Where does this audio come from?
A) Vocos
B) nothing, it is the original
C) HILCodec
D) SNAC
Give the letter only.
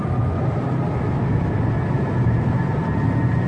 B